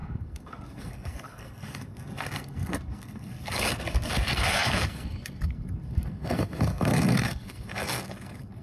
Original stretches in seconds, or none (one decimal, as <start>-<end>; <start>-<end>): none